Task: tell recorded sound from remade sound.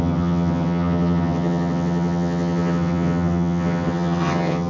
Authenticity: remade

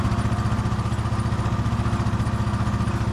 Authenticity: recorded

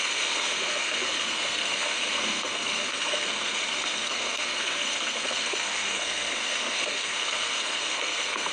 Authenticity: remade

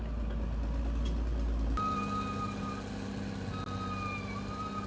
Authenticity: recorded